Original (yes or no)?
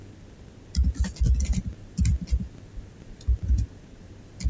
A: yes